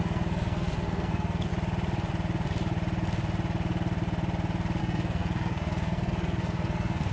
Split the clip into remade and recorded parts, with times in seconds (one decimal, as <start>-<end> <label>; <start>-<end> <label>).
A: 0.0-1.5 remade; 1.5-4.8 recorded; 4.8-7.1 remade

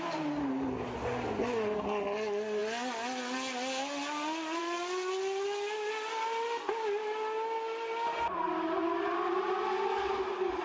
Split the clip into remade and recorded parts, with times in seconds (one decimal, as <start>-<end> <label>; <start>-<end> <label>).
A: 0.0-10.6 recorded

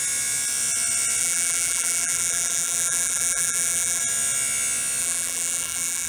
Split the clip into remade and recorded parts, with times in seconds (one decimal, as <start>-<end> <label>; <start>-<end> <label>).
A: 0.0-1.2 recorded; 1.2-4.0 remade; 4.0-5.0 recorded; 5.0-6.1 remade

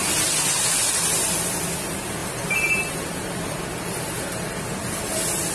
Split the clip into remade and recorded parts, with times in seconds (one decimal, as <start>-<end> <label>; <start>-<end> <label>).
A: 0.0-2.2 recorded; 2.2-3.6 remade; 3.6-5.5 recorded

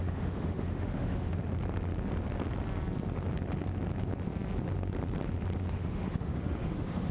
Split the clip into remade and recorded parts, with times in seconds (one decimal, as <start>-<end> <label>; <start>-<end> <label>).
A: 0.0-1.4 remade; 1.4-5.7 recorded; 5.7-7.1 remade

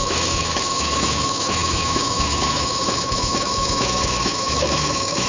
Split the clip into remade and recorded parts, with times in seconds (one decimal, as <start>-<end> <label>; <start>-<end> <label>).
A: 0.0-5.3 remade

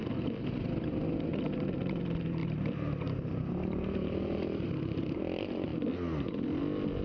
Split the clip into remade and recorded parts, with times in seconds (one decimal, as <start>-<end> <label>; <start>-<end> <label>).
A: 0.0-1.3 recorded; 1.3-2.0 remade; 2.0-2.4 recorded; 2.4-5.2 remade; 5.2-7.0 recorded

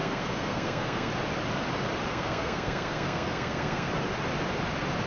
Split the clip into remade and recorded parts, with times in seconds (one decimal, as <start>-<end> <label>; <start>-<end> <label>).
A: 0.0-1.1 remade; 1.1-2.1 recorded; 2.1-3.9 remade; 3.9-5.1 recorded